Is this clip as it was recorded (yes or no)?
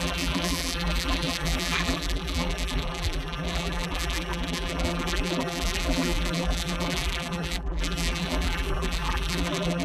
no